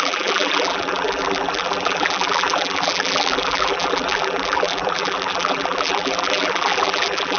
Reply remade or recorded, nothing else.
remade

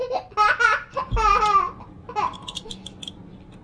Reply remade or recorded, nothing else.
recorded